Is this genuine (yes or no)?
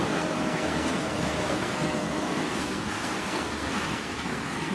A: no